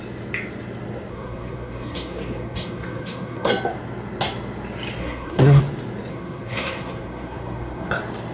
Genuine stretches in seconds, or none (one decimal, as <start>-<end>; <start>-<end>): 0.0-1.1; 3.5-5.0; 5.6-6.1; 7.9-8.3